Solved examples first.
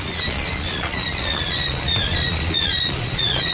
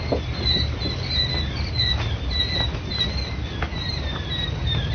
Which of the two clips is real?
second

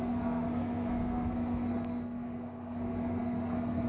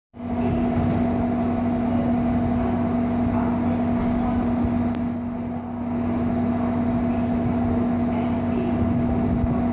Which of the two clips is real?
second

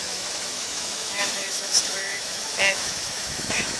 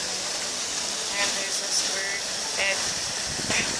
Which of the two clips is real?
second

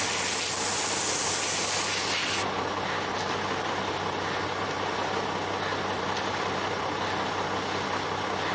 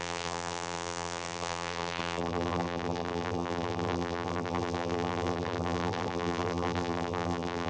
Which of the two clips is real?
first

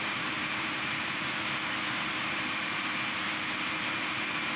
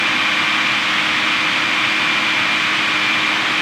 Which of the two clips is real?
second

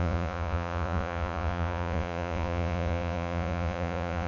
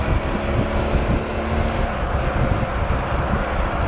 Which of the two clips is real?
second